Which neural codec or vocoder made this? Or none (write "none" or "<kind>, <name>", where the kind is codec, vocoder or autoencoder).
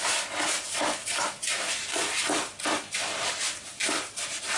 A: none